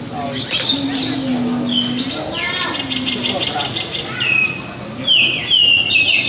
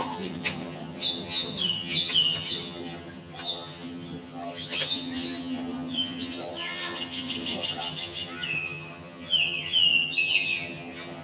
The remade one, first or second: second